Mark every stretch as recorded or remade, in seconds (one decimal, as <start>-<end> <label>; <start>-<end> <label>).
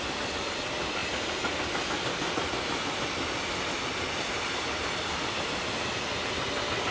0.0-6.9 recorded